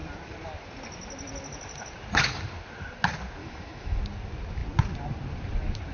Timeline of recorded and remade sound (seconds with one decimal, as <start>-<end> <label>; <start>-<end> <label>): 0.0-3.4 recorded; 3.4-4.0 remade; 4.0-5.9 recorded